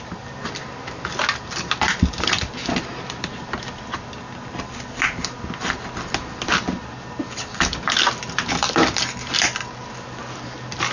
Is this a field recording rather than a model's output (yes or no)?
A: yes